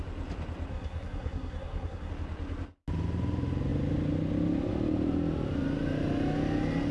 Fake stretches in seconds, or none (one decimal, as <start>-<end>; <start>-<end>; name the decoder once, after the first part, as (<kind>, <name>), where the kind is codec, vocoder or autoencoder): 0.7-2.1 (codec, SNAC)